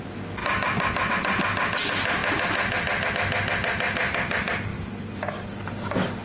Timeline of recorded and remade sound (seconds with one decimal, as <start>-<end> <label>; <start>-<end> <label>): 0.0-6.2 recorded